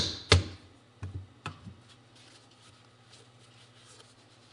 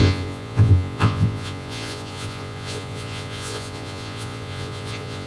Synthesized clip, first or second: second